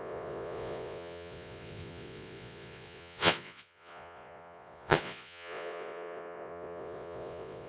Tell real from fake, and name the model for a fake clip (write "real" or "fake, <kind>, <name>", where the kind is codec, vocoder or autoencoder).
fake, vocoder, Vocos